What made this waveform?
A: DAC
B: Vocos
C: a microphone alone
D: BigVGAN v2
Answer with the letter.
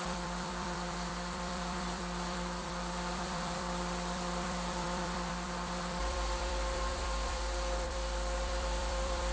D